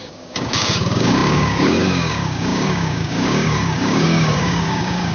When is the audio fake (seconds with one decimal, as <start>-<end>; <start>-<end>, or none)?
0.0-5.1